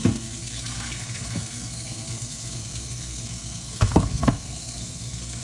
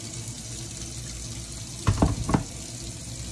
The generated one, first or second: first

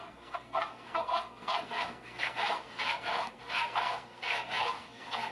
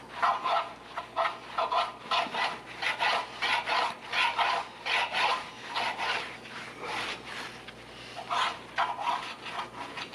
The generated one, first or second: first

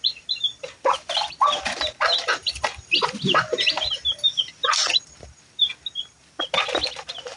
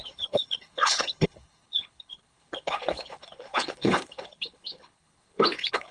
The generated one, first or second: second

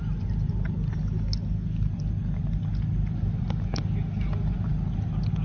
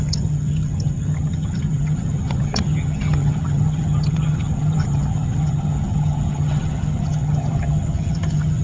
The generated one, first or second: second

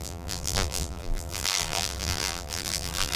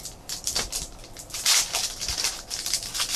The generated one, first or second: first